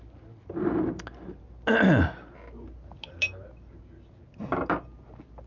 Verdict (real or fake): real